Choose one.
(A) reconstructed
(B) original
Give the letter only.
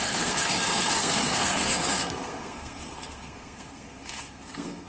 A